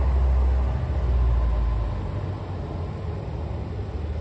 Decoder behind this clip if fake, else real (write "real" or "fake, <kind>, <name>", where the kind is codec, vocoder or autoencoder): real